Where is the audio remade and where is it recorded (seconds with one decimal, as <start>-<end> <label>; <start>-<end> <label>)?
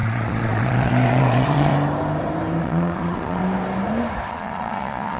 0.0-1.7 remade; 1.7-2.6 recorded; 2.6-3.4 remade; 3.4-4.3 recorded; 4.3-5.2 remade